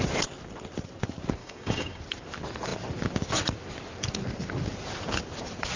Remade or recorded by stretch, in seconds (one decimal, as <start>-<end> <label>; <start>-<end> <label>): 0.0-1.4 recorded; 1.4-2.0 remade; 2.0-5.8 recorded